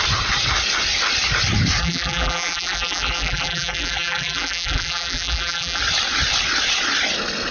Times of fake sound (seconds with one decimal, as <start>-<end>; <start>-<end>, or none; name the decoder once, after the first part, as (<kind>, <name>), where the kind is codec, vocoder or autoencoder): 1.8-5.8 (vocoder, BigVGAN v2)